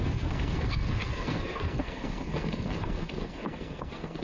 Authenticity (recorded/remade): remade